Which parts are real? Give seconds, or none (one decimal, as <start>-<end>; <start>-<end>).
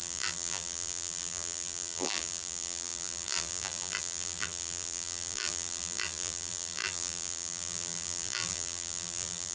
none